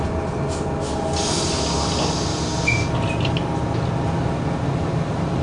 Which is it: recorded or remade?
recorded